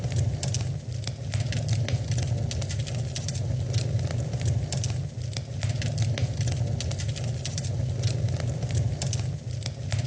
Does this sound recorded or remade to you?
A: recorded